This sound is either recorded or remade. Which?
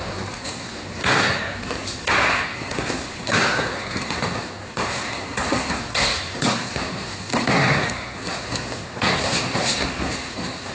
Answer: remade